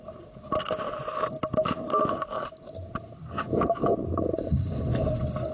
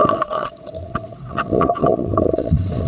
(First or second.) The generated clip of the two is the second